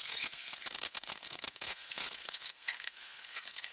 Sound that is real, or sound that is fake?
fake